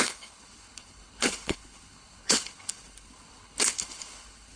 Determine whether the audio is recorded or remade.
remade